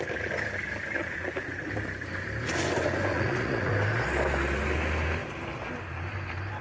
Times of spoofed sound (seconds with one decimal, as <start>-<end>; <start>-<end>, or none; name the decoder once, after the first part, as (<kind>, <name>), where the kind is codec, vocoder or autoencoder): 1.0-1.7 (vocoder, Vocos); 3.1-3.7